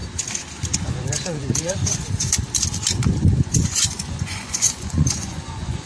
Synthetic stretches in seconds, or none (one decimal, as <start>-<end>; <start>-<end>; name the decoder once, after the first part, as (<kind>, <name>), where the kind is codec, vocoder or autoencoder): 0.9-2.3 (vocoder, Vocos); 3.2-5.9